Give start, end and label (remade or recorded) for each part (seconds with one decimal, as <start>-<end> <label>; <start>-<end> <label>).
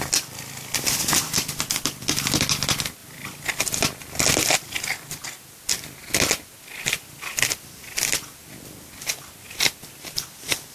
0.0-10.7 recorded